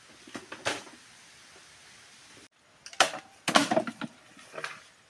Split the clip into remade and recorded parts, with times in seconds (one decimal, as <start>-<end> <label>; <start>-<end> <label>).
0.0-5.1 recorded